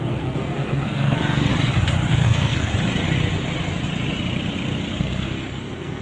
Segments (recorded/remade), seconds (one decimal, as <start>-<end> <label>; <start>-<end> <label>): 0.0-1.5 remade; 1.5-2.1 recorded; 2.1-2.7 remade; 2.7-5.0 recorded; 5.0-6.0 remade